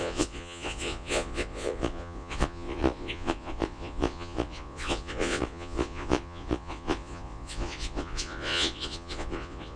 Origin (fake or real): fake